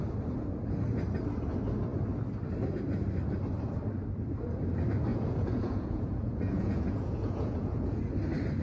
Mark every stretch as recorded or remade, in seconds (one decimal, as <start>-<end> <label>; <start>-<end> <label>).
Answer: 0.0-5.1 recorded; 5.1-8.0 remade; 8.0-8.6 recorded